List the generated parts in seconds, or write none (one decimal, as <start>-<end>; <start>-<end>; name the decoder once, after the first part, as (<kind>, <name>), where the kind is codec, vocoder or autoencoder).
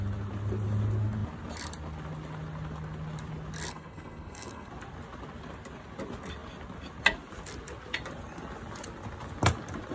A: 3.7-4.7 (codec, SNAC)